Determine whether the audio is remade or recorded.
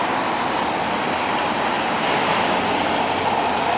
recorded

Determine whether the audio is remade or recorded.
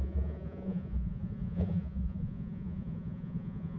remade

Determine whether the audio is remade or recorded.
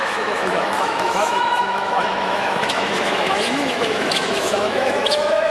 remade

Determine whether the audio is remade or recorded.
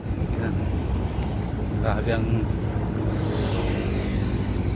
recorded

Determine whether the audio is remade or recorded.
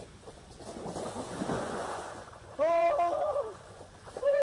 remade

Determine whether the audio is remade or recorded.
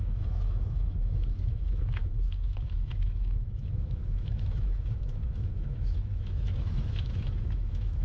remade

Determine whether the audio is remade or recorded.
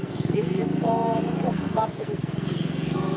remade